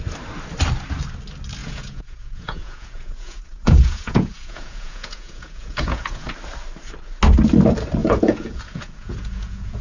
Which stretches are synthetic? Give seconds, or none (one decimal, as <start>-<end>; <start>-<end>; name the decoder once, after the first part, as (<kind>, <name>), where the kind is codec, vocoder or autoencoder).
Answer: 1.6-6.3 (vocoder, Vocos); 8.0-9.8